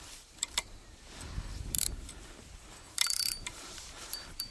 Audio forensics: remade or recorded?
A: remade